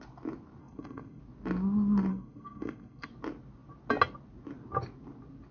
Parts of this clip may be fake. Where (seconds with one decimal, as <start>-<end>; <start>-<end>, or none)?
0.6-1.2; 2.1-3.1